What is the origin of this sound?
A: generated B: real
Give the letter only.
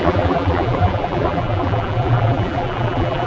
A